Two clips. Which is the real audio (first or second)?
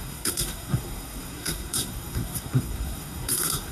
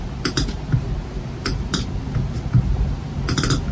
second